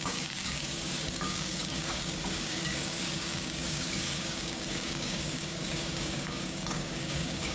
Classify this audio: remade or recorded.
remade